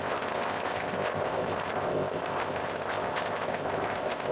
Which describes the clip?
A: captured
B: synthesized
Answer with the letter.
B